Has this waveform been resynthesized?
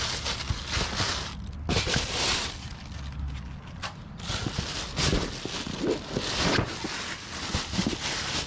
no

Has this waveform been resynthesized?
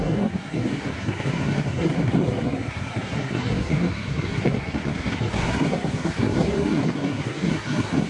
yes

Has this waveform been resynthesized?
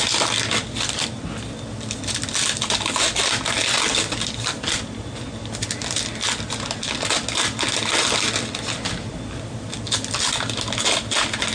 no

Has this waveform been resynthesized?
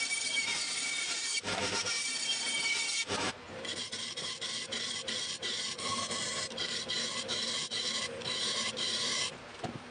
yes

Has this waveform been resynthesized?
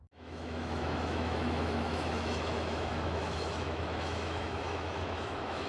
yes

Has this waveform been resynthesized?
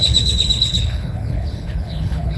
yes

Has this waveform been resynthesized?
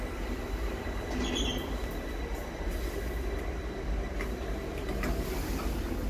no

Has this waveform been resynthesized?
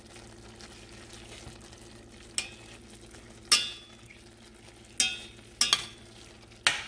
no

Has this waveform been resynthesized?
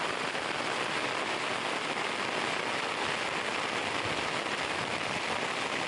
no